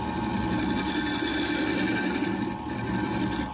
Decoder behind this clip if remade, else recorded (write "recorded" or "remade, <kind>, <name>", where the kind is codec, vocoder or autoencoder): recorded